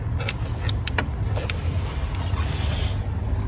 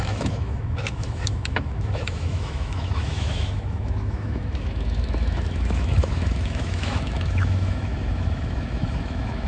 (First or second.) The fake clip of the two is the second